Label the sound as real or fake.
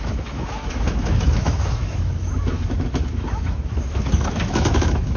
fake